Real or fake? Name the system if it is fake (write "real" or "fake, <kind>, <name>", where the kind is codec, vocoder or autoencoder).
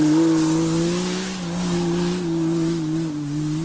real